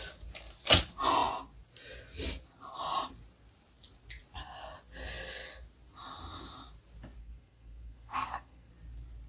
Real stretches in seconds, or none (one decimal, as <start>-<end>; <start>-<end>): 0.0-7.2; 8.7-9.3